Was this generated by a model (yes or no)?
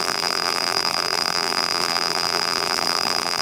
yes